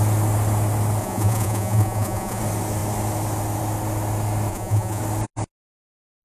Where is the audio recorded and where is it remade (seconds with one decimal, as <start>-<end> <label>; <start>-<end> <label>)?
0.0-1.0 recorded; 1.0-2.4 remade; 2.4-4.5 recorded; 4.5-5.0 remade; 5.0-6.2 recorded